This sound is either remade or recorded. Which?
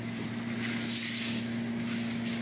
recorded